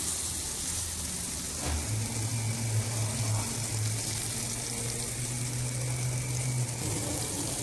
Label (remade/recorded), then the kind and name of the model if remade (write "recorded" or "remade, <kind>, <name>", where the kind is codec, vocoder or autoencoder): recorded